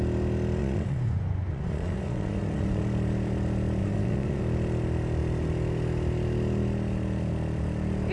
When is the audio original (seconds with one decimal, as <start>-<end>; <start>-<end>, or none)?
0.0-0.6; 2.8-3.8; 4.4-8.1